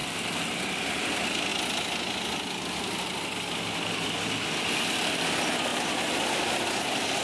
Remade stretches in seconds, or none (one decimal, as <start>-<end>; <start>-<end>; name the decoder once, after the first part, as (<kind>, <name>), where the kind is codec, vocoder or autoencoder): 0.0-0.7 (vocoder, BigVGAN v2); 5.7-6.7